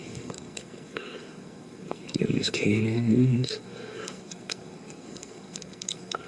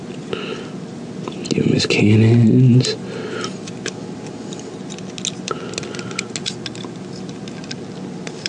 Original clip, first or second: second